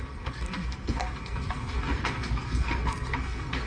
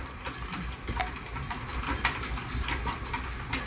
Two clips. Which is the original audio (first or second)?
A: second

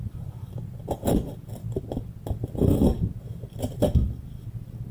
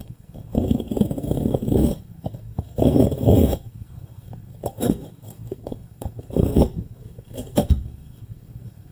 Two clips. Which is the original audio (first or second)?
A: first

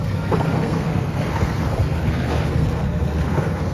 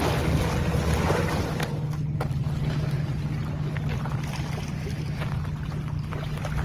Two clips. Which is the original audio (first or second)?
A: second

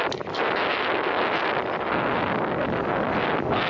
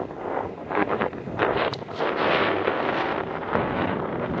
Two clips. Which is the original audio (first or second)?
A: first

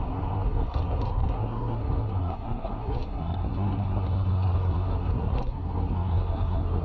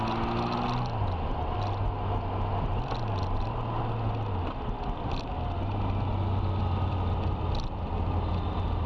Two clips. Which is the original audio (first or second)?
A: second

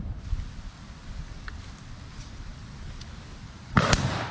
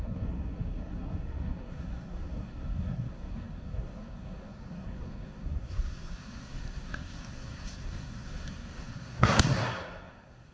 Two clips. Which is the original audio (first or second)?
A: first